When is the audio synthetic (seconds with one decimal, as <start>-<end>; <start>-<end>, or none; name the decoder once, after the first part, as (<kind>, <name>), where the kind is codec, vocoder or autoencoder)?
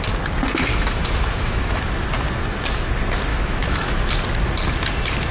0.7-1.8 (autoencoder, DAC-VAE); 3.3-4.1